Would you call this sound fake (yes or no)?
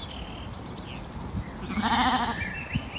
no